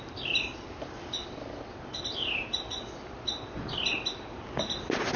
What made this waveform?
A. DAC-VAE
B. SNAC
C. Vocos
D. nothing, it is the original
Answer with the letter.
D